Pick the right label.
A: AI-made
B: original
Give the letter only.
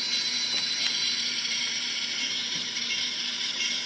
A